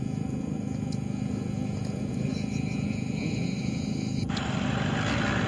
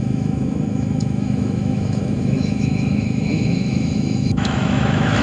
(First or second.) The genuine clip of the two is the first